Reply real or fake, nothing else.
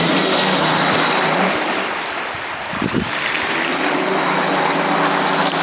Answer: fake